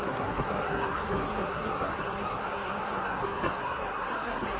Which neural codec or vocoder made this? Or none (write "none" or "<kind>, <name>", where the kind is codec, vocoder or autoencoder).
codec, SNAC